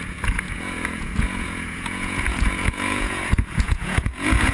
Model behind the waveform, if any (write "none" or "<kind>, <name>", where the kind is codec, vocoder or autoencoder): vocoder, Vocos